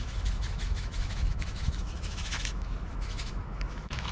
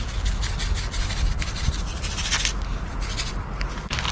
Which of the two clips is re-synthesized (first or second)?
first